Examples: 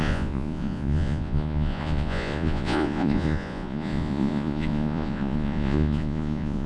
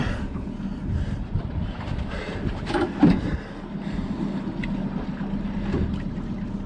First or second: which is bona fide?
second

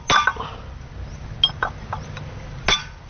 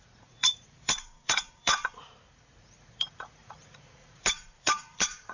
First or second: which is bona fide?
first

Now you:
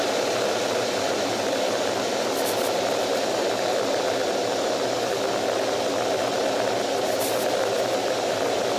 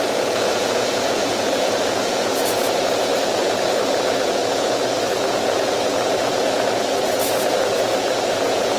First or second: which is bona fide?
first